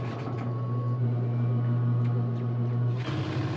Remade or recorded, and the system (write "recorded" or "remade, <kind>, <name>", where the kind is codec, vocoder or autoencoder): recorded